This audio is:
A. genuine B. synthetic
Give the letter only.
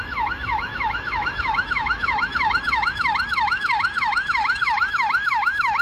B